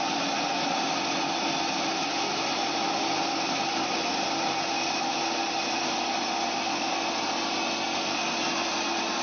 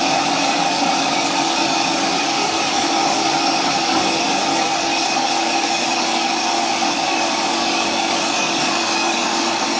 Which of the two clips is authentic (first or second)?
first